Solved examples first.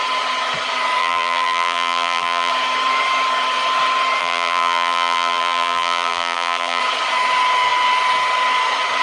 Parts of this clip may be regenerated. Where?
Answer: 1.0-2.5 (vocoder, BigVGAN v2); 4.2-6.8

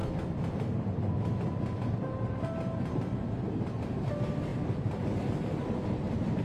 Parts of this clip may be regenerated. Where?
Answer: none

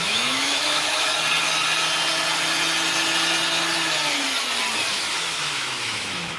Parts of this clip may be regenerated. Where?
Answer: 0.0-1.1 (autoencoder, DAC-VAE); 4.9-6.4

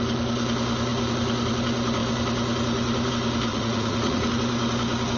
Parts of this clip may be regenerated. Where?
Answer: 3.5-4.3 (vocoder, Vocos)

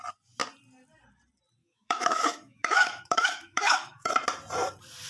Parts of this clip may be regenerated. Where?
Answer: 1.6-4.1 (autoencoder, DAC-VAE)

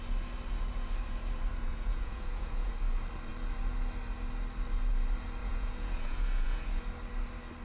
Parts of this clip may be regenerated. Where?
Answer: 1.6-2.7 (vocoder, Vocos); 5.4-6.8

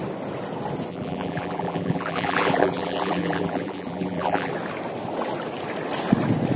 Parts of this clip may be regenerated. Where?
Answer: 0.9-4.5 (vocoder, BigVGAN v2)